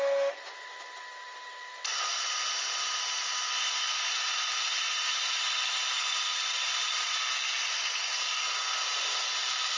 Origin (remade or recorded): recorded